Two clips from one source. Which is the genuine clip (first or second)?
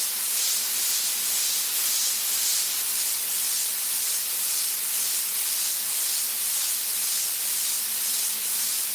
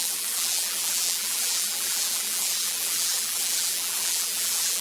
first